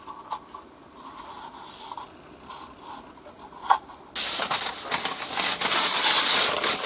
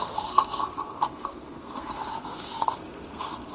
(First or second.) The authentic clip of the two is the first